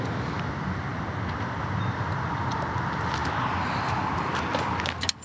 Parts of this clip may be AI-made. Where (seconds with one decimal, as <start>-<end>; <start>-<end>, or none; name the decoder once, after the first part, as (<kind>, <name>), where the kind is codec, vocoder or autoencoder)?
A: none